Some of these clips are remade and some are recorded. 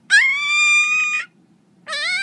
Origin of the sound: recorded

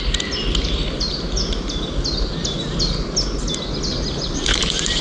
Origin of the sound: recorded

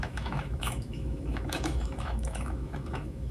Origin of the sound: remade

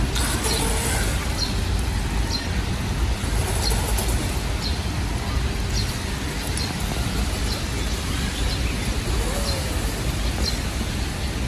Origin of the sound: recorded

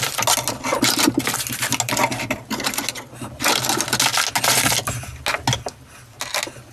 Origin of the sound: recorded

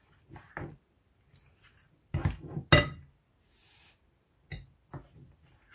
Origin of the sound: recorded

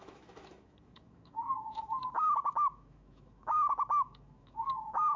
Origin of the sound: remade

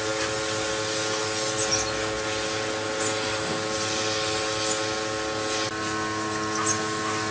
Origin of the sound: recorded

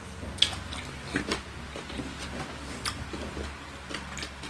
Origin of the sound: recorded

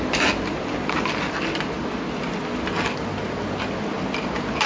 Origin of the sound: recorded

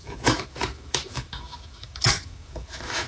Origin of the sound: remade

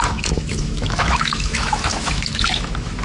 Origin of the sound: remade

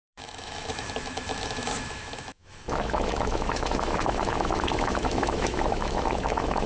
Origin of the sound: remade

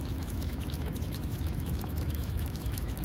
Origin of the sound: remade